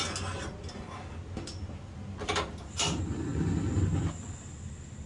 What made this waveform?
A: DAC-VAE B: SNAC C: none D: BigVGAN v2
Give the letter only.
C